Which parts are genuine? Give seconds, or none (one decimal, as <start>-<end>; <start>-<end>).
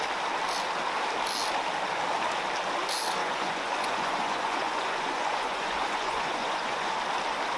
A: 0.0-3.2; 6.9-7.6